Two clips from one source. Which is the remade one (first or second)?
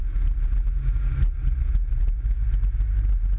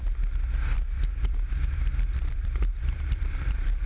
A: second